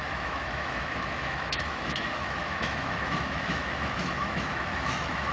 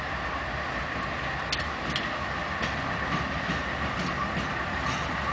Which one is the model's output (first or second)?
first